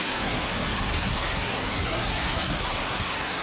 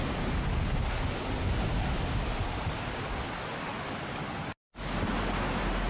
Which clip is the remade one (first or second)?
first